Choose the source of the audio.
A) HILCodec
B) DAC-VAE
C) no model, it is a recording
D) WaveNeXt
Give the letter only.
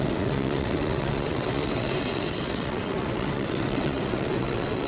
D